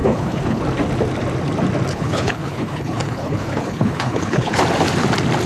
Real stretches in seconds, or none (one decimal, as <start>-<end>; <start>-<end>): 0.6-1.9; 4.6-5.5